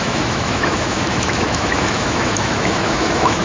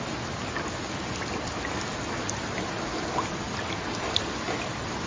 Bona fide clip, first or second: second